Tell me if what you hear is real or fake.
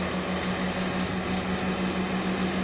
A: real